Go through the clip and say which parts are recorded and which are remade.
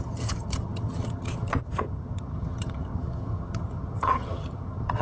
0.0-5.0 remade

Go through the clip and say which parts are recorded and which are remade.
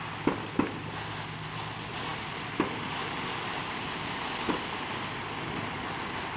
0.0-6.4 recorded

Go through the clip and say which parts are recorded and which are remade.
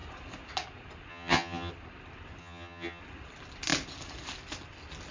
0.0-1.1 recorded; 1.1-1.7 remade; 1.7-2.4 recorded; 2.4-3.0 remade; 3.0-5.1 recorded